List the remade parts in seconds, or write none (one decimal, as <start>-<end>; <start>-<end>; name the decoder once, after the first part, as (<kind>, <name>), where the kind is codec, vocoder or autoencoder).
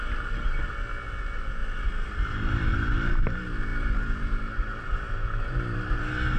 1.6-3.2 (vocoder, BigVGAN v2); 3.7-5.1